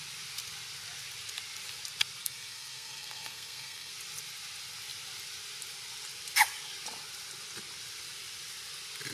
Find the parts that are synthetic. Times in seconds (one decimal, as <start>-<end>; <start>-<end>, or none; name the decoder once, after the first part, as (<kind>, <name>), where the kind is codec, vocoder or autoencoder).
2.2-3.9 (codec, SNAC)